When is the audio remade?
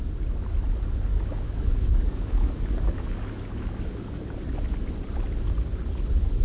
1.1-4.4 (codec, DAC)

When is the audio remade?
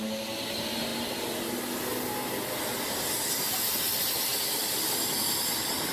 4.3-5.9 (vocoder, BigVGAN v2)